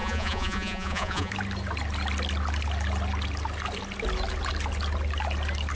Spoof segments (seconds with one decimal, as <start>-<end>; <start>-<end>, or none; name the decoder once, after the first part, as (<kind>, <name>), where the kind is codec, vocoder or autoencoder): 0.0-1.3 (vocoder, Vocos)